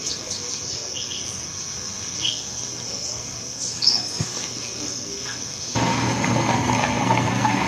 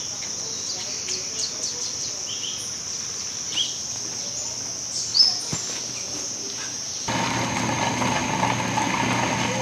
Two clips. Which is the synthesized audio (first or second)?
first